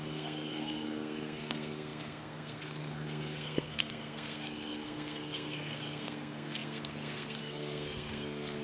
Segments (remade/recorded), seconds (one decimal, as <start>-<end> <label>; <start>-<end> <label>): 0.0-8.6 remade